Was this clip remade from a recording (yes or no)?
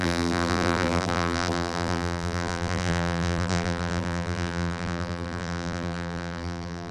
yes